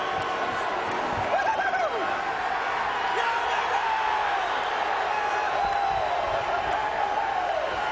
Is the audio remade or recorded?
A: recorded